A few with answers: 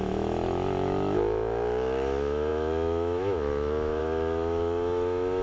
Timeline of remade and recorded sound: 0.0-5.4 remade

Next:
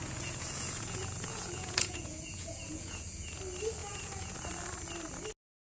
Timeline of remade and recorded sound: 0.0-3.4 remade; 3.4-3.8 recorded; 3.8-4.5 remade; 4.5-5.7 recorded